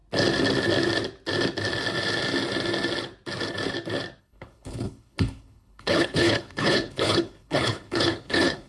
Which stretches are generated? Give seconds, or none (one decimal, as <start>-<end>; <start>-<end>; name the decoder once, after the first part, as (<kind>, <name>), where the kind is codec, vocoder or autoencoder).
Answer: 4.2-8.7 (codec, HILCodec)